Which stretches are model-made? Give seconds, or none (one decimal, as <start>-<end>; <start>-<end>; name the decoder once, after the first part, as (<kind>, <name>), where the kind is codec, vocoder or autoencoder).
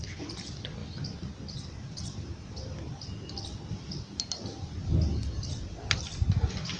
0.0-0.8 (vocoder, BigVGAN v2); 4.3-4.8; 5.5-6.8